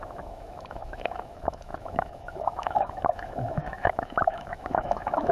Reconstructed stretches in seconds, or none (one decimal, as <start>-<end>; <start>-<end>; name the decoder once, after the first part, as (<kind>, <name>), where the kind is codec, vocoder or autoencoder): 0.0-5.3 (autoencoder, DAC-VAE)